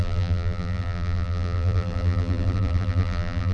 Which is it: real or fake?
fake